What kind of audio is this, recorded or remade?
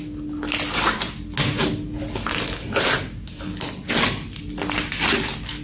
recorded